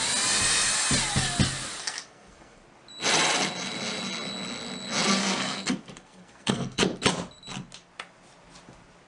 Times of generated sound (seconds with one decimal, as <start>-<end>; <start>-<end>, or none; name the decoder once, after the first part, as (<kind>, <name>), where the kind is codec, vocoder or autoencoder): 1.8-2.6 (codec, SNAC); 5.2-6.8